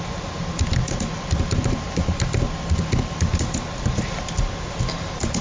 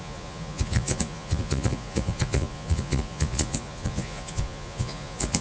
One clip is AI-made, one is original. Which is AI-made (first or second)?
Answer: second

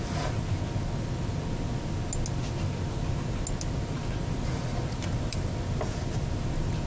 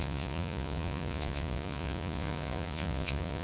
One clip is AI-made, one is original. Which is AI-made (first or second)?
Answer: second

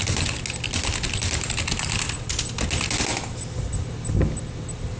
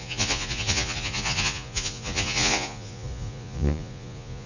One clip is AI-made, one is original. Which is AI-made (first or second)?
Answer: second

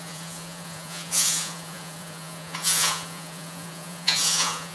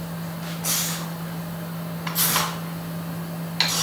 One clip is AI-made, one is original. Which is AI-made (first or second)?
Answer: first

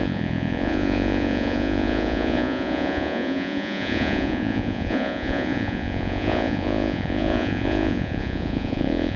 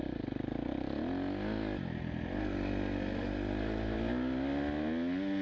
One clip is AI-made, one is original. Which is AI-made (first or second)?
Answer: first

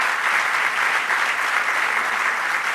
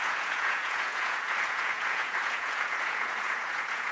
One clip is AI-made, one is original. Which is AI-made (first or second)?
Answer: second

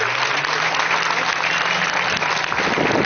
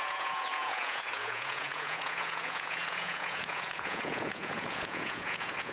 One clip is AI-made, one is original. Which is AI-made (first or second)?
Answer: second